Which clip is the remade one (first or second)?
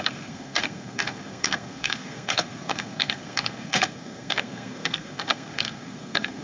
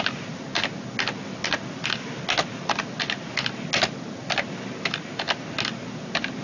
first